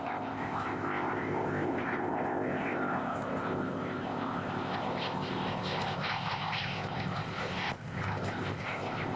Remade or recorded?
remade